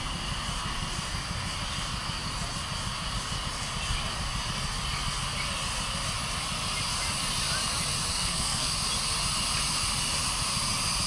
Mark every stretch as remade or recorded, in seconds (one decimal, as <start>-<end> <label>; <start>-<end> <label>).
0.0-8.1 recorded; 8.1-8.7 remade; 8.7-11.1 recorded